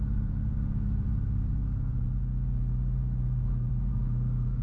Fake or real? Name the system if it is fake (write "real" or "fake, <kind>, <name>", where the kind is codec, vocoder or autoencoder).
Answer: fake, vocoder, Vocos